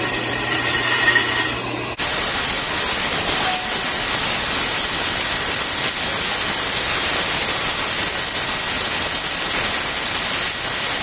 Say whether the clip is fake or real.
real